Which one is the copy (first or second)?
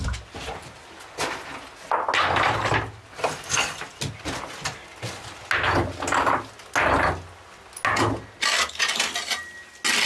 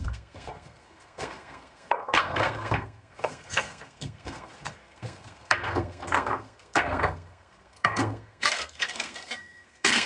second